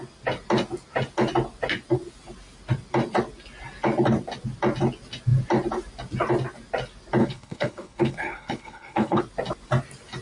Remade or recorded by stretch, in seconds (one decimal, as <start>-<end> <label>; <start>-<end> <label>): 0.0-7.2 recorded; 7.2-9.2 remade; 9.2-10.2 recorded